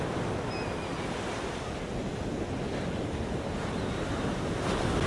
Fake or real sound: real